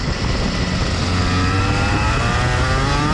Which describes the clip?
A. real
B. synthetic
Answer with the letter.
A